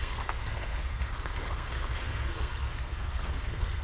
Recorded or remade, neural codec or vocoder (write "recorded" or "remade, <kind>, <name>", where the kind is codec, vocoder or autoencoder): remade, codec, SNAC